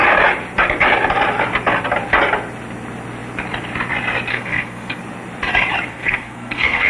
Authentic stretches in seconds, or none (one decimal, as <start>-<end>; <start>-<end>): 0.0-4.3; 5.0-5.9